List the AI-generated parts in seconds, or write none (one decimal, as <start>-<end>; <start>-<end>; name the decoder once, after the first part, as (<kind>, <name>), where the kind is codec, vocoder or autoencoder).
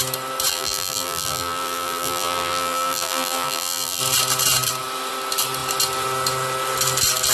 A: 0.5-4.0 (vocoder, BigVGAN v2)